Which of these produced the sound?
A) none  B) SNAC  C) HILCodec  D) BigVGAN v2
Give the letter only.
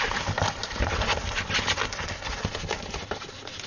A